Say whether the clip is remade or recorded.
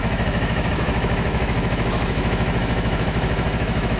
remade